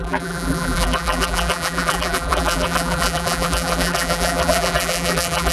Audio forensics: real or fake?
fake